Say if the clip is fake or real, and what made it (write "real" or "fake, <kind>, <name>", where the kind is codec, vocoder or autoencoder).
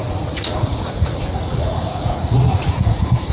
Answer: fake, vocoder, Vocos